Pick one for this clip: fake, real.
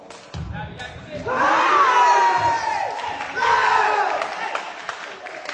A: real